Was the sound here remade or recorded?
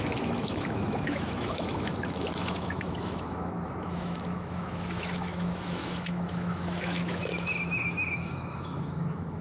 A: remade